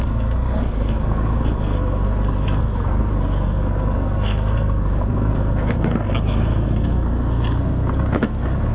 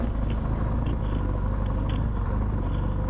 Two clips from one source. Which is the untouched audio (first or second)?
second